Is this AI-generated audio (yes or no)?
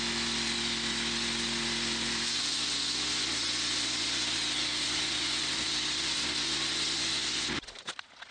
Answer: no